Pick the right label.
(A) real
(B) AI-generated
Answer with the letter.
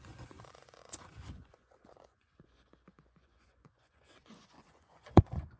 B